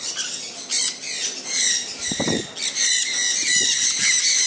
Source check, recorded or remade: recorded